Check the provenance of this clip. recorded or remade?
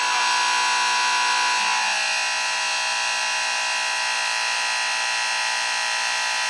recorded